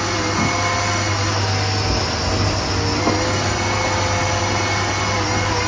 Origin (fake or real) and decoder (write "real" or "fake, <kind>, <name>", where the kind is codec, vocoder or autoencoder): real